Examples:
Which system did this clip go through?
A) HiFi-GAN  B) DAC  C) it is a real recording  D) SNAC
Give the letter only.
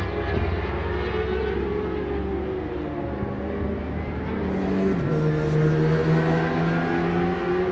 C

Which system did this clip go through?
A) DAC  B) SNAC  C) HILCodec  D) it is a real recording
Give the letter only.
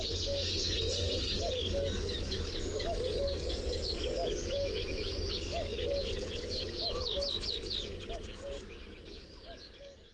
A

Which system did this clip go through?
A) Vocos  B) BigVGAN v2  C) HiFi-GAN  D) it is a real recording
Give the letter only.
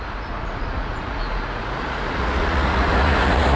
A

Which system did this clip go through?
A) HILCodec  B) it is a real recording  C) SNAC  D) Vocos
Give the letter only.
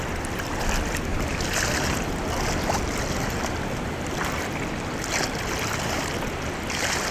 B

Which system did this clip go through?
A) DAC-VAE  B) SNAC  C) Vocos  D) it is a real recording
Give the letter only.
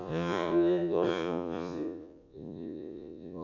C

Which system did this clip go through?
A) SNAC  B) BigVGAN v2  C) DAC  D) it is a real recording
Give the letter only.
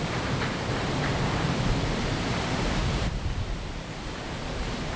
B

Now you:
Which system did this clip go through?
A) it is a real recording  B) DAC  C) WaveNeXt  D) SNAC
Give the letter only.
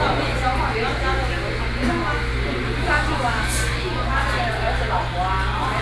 A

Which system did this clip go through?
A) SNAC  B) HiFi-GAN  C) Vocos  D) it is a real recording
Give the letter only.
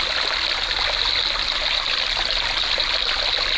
D